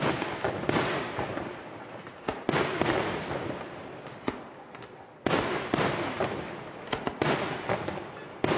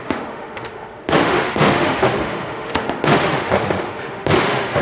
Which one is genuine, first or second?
first